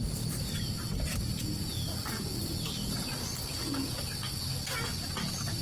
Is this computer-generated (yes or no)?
no